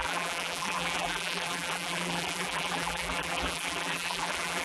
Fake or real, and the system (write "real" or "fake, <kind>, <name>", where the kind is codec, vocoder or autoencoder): fake, vocoder, BigVGAN v2